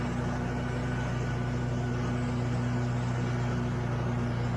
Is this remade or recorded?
recorded